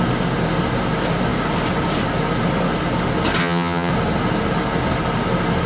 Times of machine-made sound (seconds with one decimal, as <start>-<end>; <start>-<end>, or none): 3.4-3.9